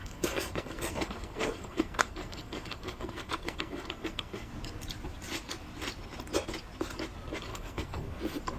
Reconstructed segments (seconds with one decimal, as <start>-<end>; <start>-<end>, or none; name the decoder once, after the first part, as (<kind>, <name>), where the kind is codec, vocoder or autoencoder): 0.0-4.5 (codec, SNAC); 7.5-8.2